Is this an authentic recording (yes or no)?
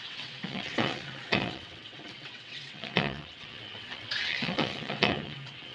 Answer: no